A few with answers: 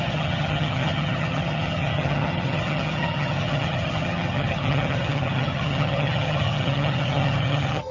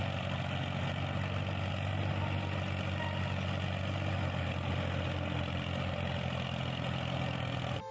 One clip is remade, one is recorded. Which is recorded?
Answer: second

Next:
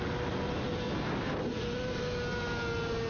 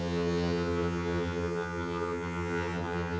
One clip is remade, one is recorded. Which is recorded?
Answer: first